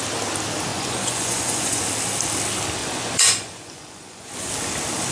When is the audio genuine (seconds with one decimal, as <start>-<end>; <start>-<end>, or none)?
0.0-0.7; 1.8-2.8; 4.5-5.1